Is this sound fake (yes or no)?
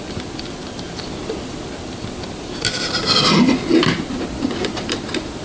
no